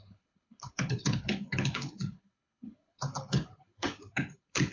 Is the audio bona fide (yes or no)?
no